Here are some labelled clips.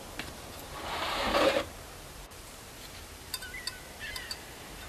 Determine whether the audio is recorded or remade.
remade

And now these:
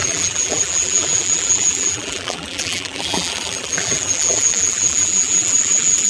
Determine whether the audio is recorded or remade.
remade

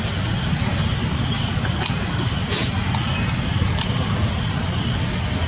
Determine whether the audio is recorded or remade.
recorded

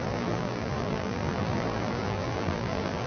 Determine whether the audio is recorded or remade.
remade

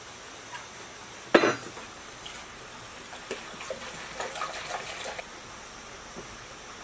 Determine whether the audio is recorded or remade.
recorded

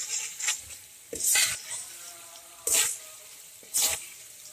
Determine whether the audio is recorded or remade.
remade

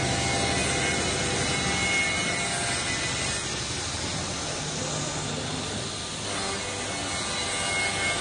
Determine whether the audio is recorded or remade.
recorded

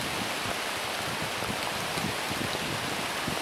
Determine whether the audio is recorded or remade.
recorded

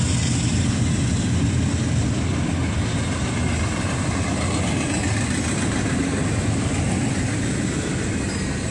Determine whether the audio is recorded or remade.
recorded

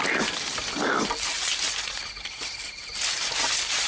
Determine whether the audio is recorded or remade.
recorded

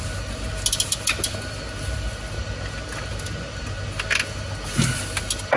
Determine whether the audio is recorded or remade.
recorded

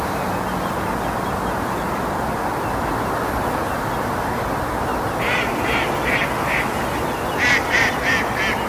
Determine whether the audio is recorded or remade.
recorded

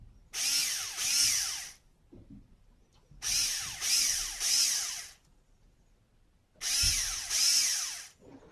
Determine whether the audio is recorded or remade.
recorded